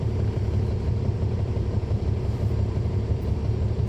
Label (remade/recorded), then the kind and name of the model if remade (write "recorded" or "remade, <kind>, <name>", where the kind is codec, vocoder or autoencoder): remade, vocoder, BigVGAN v2